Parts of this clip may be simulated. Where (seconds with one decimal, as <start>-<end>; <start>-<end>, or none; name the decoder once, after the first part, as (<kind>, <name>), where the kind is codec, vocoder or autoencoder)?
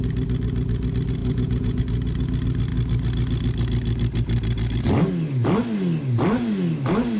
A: 1.2-1.8 (vocoder, Vocos)